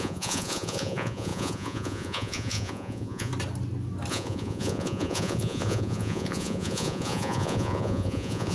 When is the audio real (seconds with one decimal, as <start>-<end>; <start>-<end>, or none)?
3.3-4.1